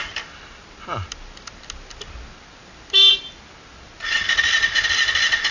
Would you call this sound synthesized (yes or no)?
no